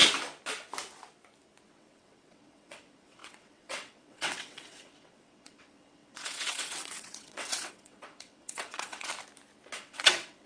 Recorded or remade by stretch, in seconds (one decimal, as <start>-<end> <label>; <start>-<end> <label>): 0.0-1.6 recorded; 1.6-9.1 remade; 9.1-9.8 recorded; 9.8-10.5 remade